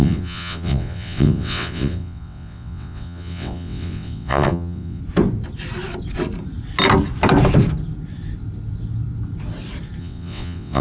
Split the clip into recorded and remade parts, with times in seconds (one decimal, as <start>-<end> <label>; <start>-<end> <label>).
0.0-5.0 remade; 5.0-10.0 recorded; 10.0-10.8 remade